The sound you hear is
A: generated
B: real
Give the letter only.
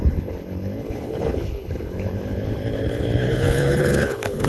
A